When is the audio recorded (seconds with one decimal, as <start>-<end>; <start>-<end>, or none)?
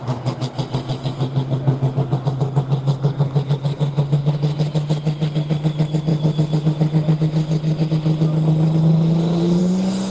0.0-10.1